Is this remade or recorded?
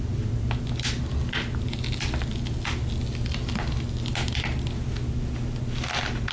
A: recorded